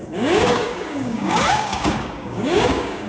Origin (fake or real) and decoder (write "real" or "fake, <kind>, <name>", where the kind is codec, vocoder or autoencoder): fake, codec, DAC